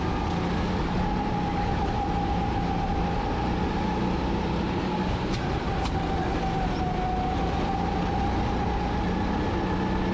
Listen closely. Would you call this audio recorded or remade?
recorded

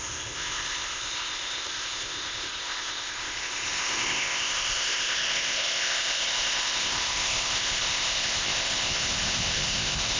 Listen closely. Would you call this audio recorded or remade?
remade